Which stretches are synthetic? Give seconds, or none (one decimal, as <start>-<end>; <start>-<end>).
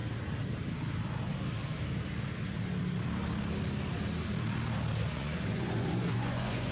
5.0-6.7